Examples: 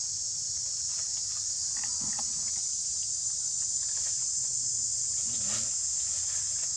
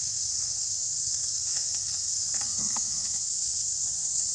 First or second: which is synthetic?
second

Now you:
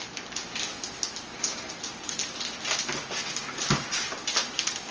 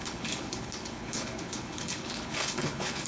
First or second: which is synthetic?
second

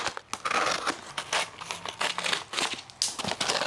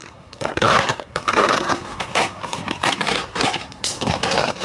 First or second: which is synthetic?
second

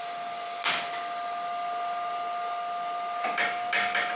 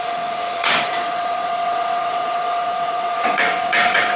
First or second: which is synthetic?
second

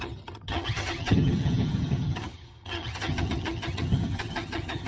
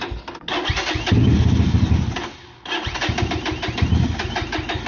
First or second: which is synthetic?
first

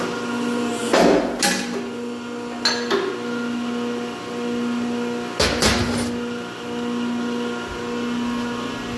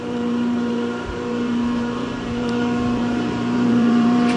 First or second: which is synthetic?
second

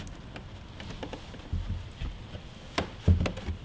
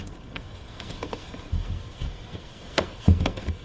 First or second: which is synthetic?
second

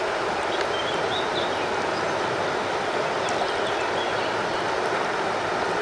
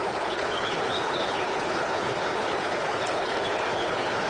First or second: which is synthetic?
second